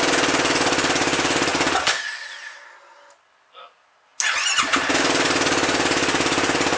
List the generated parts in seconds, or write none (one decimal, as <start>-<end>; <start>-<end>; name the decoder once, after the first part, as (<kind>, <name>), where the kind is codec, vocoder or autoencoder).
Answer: none